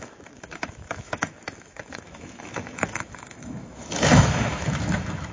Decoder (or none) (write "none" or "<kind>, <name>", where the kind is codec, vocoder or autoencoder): autoencoder, DAC-VAE